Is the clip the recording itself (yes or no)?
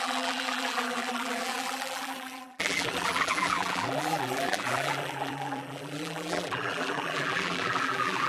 no